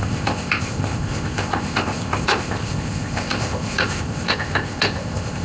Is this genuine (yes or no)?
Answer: no